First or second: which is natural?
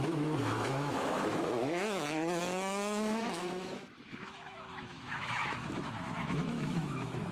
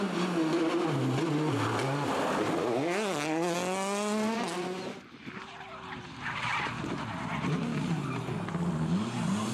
second